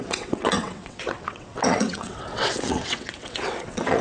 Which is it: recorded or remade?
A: remade